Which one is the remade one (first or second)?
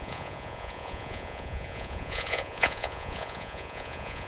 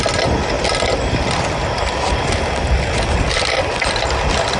first